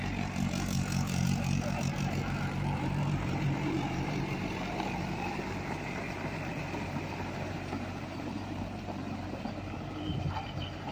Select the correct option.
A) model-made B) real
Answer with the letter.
A